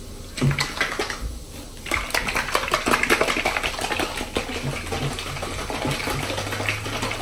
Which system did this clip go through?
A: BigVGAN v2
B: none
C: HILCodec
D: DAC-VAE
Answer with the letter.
B